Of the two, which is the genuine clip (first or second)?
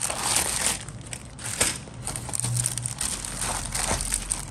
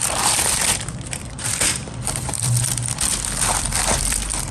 first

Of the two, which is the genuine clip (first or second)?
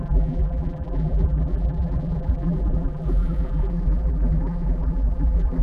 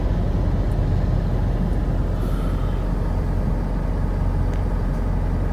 second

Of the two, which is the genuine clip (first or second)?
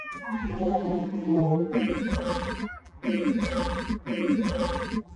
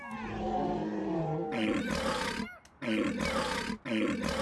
second